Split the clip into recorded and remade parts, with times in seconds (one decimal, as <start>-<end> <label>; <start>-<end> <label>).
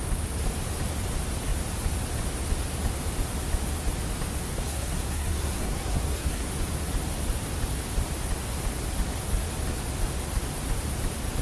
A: 0.0-4.5 recorded; 4.5-6.5 remade; 6.5-11.4 recorded